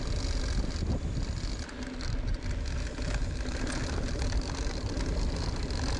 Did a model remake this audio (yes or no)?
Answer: no